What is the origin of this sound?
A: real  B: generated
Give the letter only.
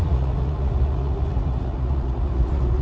B